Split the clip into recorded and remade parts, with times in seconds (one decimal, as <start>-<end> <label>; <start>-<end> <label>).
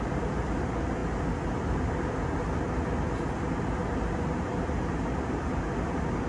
0.0-6.3 recorded